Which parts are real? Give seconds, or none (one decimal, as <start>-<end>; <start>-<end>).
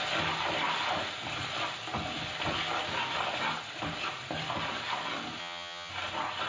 0.0-5.4; 5.9-6.5